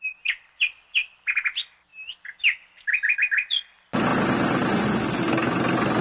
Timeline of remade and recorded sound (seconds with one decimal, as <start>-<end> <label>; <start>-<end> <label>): 0.0-6.0 recorded